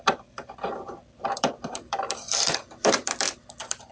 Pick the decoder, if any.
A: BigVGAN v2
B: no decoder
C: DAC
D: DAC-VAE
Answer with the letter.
A